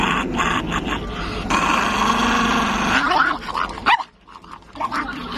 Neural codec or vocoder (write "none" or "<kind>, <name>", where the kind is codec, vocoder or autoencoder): none